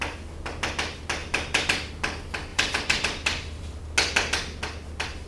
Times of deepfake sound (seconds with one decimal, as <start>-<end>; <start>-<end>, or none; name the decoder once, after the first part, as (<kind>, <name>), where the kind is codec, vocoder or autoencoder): 1.2-1.9 (vocoder, BigVGAN v2); 2.5-3.8